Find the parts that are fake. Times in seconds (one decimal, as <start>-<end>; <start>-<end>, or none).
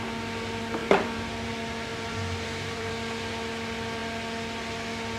0.8-1.5; 1.9-2.9